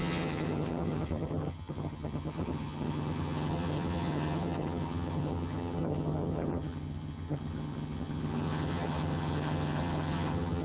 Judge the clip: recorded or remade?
remade